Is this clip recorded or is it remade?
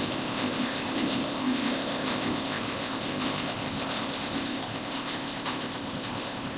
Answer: remade